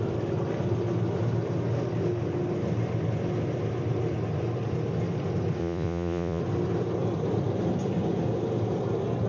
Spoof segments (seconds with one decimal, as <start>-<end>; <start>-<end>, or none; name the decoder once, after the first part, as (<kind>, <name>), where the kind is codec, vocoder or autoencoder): 5.6-6.4 (vocoder, Vocos)